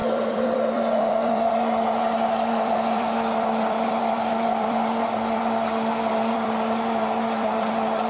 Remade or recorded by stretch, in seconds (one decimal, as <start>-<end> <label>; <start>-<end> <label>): 0.0-8.1 remade